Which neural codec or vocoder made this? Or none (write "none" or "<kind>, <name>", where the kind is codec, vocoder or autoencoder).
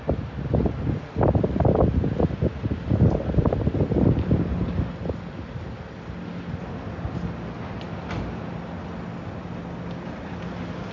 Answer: none